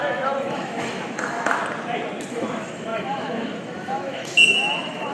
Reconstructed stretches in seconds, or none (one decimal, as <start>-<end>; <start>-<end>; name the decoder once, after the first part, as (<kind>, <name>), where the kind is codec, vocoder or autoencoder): 0.0-1.6 (autoencoder, DAC-VAE); 2.3-5.1